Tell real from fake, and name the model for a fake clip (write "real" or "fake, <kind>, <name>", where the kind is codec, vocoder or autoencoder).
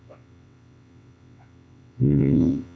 fake, vocoder, WaveNeXt